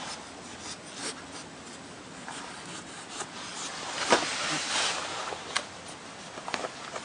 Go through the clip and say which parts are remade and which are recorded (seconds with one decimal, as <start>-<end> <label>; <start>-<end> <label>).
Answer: 0.0-2.2 recorded; 2.2-5.7 remade; 5.7-7.0 recorded